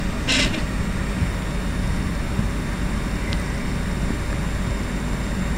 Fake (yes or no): no